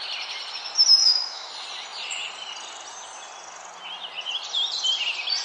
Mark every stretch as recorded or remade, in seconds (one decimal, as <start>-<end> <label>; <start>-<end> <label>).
0.0-1.0 recorded; 1.0-1.5 remade; 1.5-5.4 recorded